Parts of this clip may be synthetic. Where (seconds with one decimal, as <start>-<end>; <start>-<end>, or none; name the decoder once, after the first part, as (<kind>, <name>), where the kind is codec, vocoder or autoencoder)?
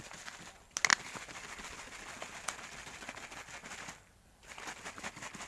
none